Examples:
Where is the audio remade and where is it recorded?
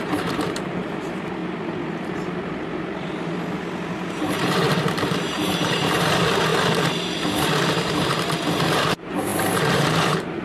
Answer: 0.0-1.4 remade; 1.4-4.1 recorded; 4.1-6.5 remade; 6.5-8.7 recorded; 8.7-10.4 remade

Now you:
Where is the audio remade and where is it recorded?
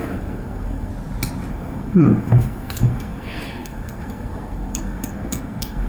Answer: 0.0-0.9 remade; 0.9-1.5 recorded; 1.5-5.9 remade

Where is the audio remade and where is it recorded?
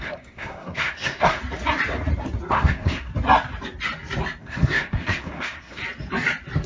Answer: 0.0-1.4 remade; 1.4-2.5 recorded; 2.5-3.1 remade; 3.1-4.4 recorded; 4.4-5.8 remade; 5.8-6.7 recorded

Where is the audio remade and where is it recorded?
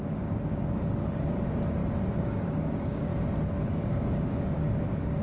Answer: 0.0-1.8 remade; 1.8-2.3 recorded; 2.3-3.1 remade; 3.1-3.7 recorded; 3.7-5.2 remade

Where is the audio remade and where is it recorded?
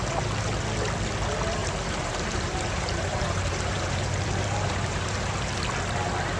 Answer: 0.0-1.6 recorded; 1.6-5.3 remade; 5.3-6.4 recorded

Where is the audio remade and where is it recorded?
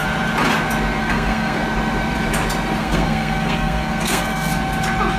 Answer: 0.0-1.0 recorded; 1.0-1.6 remade; 1.6-2.8 recorded; 2.8-4.5 remade; 4.5-5.2 recorded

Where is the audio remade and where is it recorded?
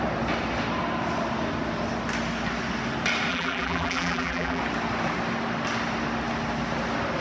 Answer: 0.0-3.3 recorded; 3.3-4.6 remade; 4.6-7.2 recorded